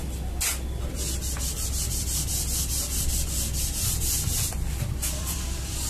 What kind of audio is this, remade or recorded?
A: remade